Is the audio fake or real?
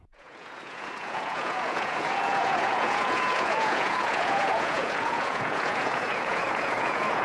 fake